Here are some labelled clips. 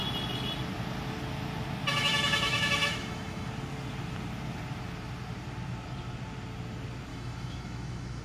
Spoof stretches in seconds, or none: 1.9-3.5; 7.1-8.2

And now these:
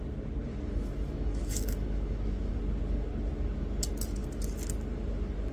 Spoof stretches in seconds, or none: 0.5-2.5

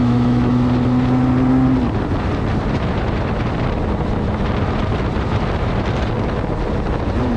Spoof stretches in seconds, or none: 0.0-0.5

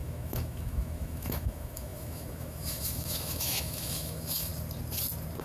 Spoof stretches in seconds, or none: 0.0-4.5

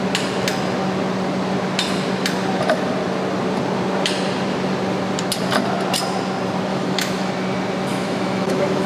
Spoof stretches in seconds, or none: 6.7-7.3; 7.9-8.9